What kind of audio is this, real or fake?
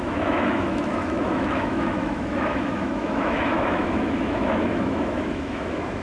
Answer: fake